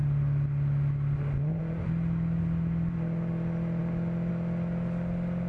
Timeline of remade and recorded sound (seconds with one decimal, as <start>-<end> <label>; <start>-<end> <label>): 0.0-5.5 recorded

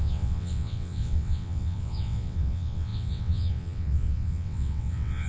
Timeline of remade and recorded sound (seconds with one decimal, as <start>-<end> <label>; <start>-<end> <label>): 0.0-5.3 remade

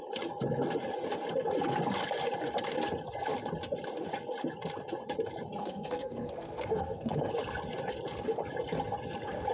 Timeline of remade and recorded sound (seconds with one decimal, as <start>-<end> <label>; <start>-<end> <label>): 0.0-5.6 recorded; 5.6-7.3 remade; 7.3-9.5 recorded

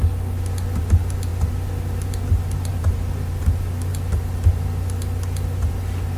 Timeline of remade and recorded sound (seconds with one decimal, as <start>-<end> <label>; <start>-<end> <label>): 0.0-2.7 recorded; 2.7-3.4 remade; 3.4-6.2 recorded